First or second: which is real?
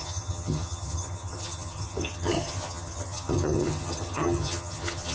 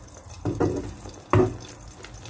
second